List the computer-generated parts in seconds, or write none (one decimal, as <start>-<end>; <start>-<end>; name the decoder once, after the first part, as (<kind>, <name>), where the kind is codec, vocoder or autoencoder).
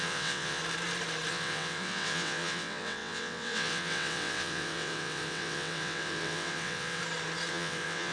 0.0-0.6 (vocoder, WaveNeXt); 1.3-7.0; 7.5-8.1